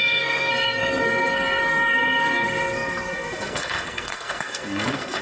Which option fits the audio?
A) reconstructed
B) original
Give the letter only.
A